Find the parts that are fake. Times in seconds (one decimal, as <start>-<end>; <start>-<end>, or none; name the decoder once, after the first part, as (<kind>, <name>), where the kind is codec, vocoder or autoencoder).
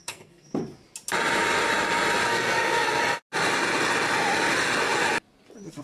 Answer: 0.0-0.6 (codec, SNAC); 2.2-3.0